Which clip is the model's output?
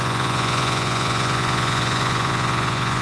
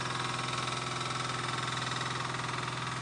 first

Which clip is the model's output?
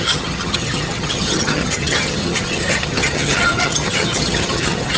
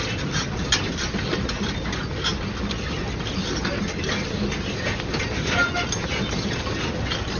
first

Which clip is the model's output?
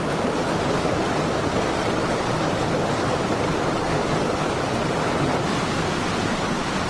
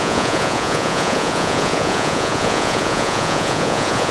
second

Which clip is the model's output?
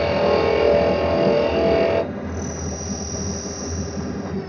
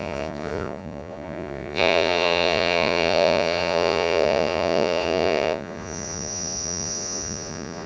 second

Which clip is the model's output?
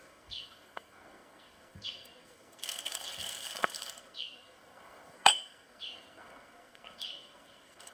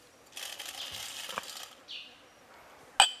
first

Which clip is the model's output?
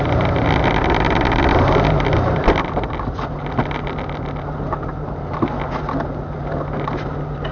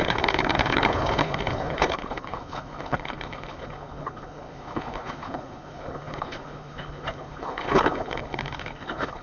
second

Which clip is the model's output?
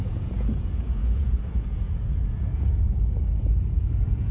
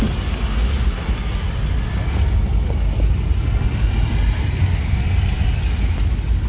first